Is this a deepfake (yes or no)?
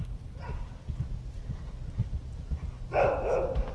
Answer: no